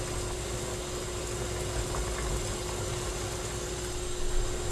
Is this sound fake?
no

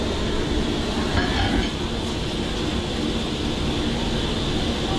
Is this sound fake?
no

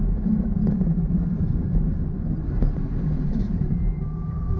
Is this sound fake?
yes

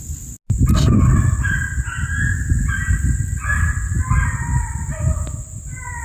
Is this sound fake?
no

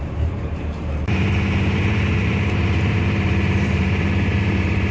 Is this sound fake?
yes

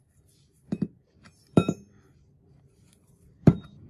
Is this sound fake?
yes